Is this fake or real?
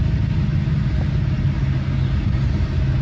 real